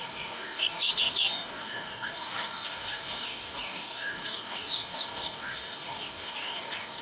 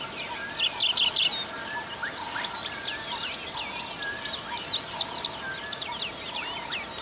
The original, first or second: second